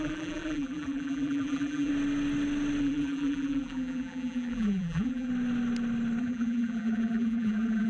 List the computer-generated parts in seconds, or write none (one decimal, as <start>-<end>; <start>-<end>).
0.0-1.9; 2.8-5.3; 6.2-7.9